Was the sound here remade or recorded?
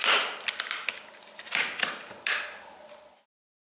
recorded